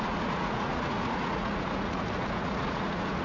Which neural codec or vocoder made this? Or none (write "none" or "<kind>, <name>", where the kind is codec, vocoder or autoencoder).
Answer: vocoder, Vocos